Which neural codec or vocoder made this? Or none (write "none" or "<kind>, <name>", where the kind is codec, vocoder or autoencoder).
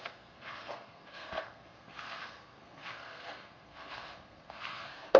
codec, SNAC